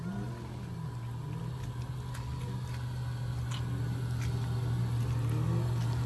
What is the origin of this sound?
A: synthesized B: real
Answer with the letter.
B